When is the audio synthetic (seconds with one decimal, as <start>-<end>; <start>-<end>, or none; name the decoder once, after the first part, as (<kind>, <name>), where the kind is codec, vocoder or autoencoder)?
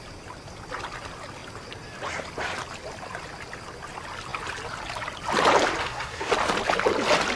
5.8-6.3 (codec, SNAC)